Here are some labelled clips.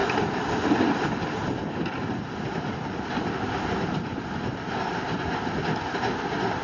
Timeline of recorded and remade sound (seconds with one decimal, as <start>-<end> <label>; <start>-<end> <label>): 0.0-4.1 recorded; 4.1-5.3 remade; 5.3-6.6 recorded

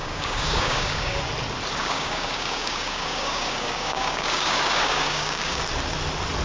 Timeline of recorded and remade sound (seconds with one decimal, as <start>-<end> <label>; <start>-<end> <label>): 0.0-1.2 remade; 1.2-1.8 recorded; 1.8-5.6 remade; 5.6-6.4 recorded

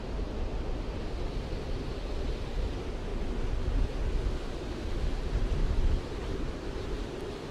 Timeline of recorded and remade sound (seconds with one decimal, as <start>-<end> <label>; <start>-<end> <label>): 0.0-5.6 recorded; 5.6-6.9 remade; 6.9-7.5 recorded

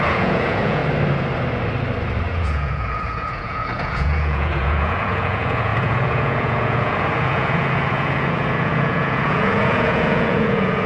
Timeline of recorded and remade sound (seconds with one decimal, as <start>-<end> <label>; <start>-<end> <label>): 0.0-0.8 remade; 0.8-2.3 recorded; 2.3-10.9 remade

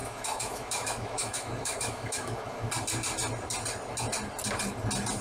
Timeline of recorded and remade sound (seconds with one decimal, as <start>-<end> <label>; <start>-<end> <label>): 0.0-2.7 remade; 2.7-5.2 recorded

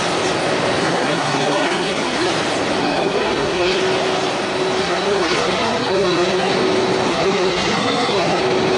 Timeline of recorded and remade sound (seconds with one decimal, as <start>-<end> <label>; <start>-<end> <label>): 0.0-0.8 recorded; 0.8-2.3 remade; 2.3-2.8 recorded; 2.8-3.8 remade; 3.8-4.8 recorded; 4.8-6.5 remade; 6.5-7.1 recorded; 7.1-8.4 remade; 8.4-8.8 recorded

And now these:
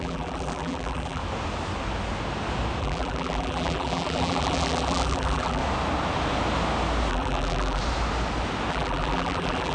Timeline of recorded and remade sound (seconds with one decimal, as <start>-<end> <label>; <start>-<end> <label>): 0.0-1.2 remade; 1.2-2.8 recorded; 2.8-5.6 remade; 5.6-7.1 recorded; 7.1-7.8 remade; 7.8-8.7 recorded; 8.7-9.7 remade

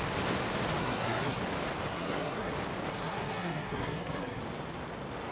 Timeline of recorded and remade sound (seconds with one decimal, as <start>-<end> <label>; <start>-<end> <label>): 0.0-0.8 recorded; 0.8-1.4 remade; 1.4-1.9 recorded; 1.9-2.5 remade; 2.5-2.9 recorded; 2.9-4.4 remade; 4.4-5.3 recorded